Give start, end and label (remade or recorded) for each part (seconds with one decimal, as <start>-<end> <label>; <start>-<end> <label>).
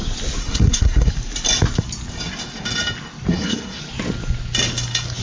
0.0-0.4 recorded; 0.4-1.1 remade; 1.1-3.3 recorded; 3.3-3.8 remade; 3.8-5.2 recorded